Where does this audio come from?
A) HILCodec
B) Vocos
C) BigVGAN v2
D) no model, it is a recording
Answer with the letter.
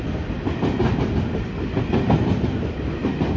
D